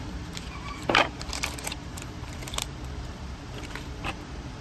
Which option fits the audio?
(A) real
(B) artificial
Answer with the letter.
B